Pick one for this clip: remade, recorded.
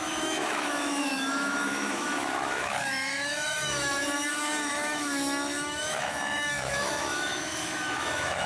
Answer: remade